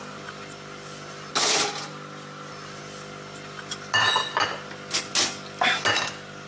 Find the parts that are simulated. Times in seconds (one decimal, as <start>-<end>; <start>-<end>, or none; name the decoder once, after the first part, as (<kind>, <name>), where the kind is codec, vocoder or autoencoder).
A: none